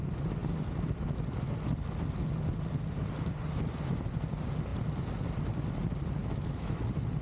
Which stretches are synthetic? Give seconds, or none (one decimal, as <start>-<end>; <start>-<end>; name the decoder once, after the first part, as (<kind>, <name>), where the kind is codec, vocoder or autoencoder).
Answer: 6.2-6.8 (autoencoder, DAC-VAE)